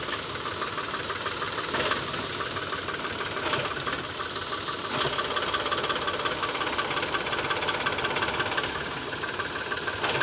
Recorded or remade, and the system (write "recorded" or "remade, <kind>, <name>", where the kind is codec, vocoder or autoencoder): recorded